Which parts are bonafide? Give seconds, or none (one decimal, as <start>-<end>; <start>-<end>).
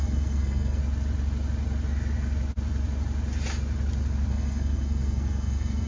0.8-4.3